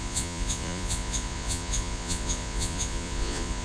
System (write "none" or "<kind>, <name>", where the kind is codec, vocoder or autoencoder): vocoder, Vocos